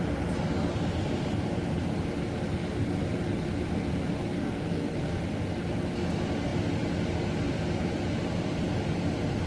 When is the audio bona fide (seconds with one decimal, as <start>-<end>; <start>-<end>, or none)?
0.0-4.4; 5.2-9.5